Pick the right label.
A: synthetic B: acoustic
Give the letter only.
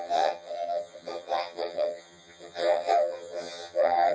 A